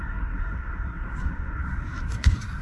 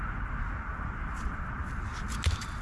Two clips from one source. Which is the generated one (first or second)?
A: first